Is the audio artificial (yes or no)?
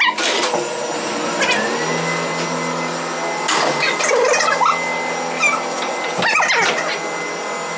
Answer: no